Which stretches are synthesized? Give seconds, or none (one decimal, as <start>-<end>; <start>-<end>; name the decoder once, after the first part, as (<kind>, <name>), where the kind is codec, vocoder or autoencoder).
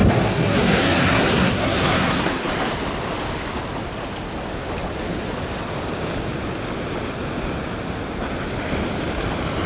0.0-2.5 (codec, SNAC)